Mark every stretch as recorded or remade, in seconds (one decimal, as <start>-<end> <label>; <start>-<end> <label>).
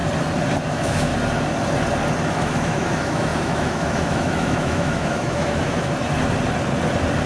0.0-0.7 recorded; 0.7-1.1 remade; 1.1-2.3 recorded; 2.3-5.9 remade; 5.9-7.3 recorded